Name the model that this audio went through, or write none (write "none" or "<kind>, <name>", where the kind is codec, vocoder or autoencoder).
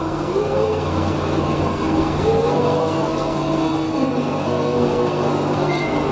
codec, SNAC